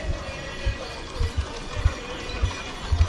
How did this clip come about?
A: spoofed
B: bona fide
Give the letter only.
A